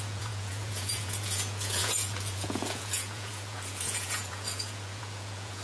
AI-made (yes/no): yes